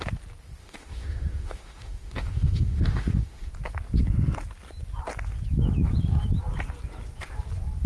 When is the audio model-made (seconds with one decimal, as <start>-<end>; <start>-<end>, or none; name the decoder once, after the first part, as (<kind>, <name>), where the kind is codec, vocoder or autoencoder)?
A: 0.6-3.5 (autoencoder, DAC-VAE)